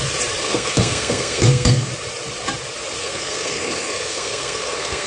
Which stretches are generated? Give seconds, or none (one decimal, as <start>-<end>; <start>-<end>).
0.4-1.9; 3.0-5.1

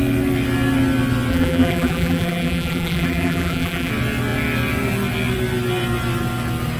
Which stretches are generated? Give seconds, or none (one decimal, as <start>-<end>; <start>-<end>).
1.3-3.9